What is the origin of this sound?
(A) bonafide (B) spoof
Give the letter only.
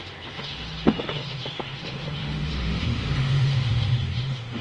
B